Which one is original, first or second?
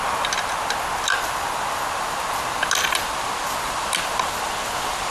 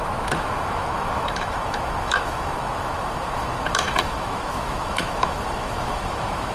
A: first